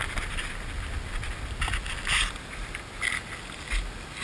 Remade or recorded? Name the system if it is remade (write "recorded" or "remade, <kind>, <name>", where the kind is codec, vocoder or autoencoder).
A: recorded